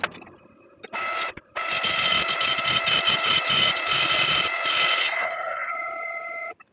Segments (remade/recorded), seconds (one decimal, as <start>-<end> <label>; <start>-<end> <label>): 0.0-5.0 recorded; 5.0-5.7 remade; 5.7-6.7 recorded